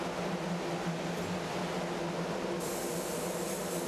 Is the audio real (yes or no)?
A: yes